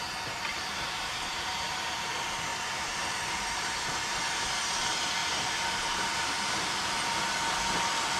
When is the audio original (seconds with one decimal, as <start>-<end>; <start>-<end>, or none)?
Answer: 0.0-0.5; 2.1-2.5; 4.2-5.2; 6.9-8.2